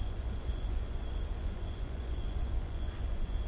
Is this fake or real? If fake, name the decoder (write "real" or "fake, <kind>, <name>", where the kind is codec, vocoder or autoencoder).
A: fake, vocoder, Vocos